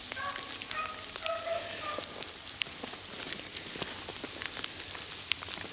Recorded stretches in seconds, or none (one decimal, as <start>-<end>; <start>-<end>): 0.0-5.7

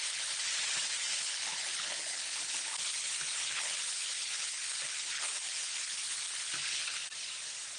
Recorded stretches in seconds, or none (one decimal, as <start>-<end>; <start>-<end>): 7.0-7.8

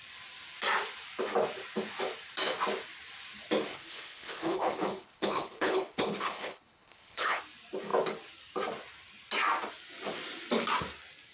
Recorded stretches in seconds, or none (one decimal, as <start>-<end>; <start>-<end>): 0.0-3.7; 7.4-11.3

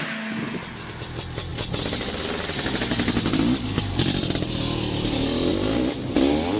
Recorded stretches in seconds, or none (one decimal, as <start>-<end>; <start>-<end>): 0.0-6.6

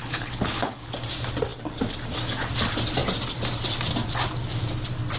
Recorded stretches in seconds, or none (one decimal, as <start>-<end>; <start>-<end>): 0.9-5.2

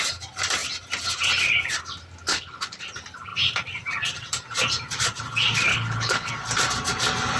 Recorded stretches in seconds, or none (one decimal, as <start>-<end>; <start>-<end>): 0.0-2.3; 2.8-5.7; 6.3-7.4